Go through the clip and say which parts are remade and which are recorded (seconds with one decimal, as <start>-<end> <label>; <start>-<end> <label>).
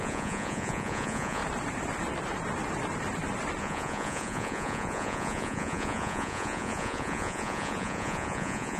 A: 0.0-1.4 remade; 1.4-3.6 recorded; 3.6-8.8 remade